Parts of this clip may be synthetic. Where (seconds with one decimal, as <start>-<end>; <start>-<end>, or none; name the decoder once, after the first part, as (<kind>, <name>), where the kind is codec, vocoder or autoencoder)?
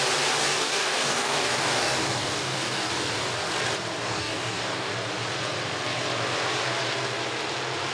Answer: 0.4-2.9 (codec, DAC); 4.0-4.9